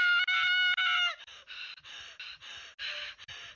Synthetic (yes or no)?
no